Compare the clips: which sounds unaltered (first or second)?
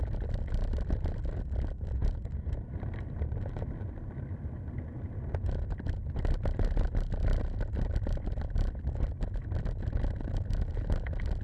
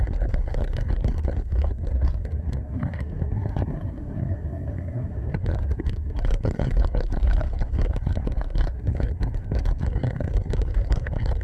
first